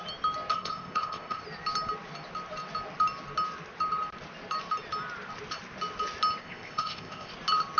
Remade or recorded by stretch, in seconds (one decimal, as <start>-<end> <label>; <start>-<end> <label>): 0.0-0.5 recorded; 0.5-1.4 remade; 1.4-6.4 recorded; 6.4-7.3 remade; 7.3-7.8 recorded